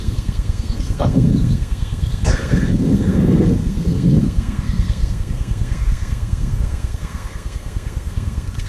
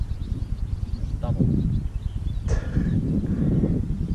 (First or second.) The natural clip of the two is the second